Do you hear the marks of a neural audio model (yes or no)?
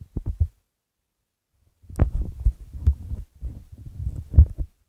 no